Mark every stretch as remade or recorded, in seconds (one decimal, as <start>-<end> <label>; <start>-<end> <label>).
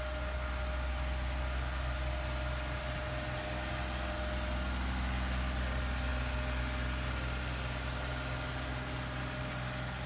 0.0-10.1 recorded